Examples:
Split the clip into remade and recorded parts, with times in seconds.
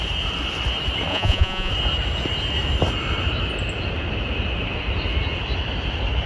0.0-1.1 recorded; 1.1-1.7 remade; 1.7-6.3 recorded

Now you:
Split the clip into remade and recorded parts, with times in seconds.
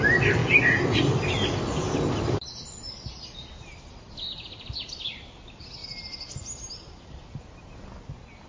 0.0-8.5 recorded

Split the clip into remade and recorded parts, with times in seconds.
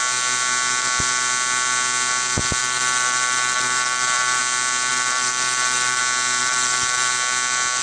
0.0-2.6 recorded; 2.6-4.4 remade; 4.4-4.9 recorded; 4.9-6.0 remade; 6.0-6.4 recorded; 6.4-7.1 remade; 7.1-7.8 recorded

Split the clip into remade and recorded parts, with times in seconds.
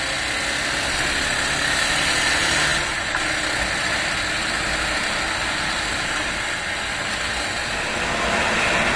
0.0-9.0 recorded